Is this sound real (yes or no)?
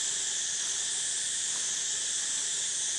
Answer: yes